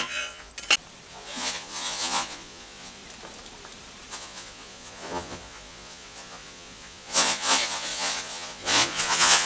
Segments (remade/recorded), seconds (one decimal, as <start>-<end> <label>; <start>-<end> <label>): 0.0-0.5 remade; 0.5-1.1 recorded; 1.1-3.0 remade; 3.0-4.1 recorded; 4.1-9.5 remade